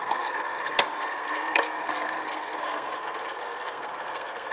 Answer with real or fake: fake